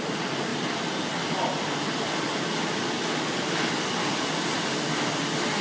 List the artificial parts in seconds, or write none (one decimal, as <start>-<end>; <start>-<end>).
none